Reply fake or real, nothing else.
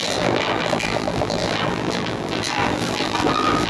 fake